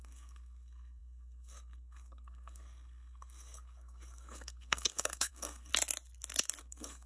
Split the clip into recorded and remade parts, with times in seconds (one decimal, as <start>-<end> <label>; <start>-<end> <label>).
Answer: 0.0-5.7 remade; 5.7-6.6 recorded; 6.6-7.1 remade